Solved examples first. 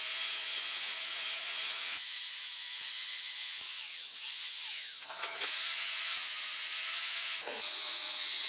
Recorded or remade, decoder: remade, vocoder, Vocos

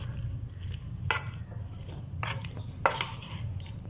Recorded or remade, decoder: recorded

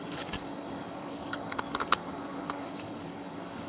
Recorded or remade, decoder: remade, codec, DAC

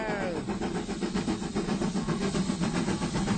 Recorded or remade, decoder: recorded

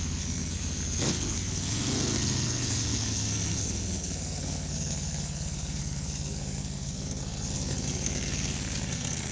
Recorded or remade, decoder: remade, codec, SNAC